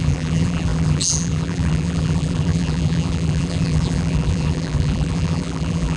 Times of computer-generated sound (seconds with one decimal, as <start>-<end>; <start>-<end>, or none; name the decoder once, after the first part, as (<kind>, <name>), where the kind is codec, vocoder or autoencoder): 0.0-6.0 (vocoder, BigVGAN v2)

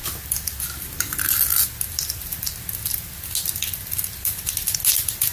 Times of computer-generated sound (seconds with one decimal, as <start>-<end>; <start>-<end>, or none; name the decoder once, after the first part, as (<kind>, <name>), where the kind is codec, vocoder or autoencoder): none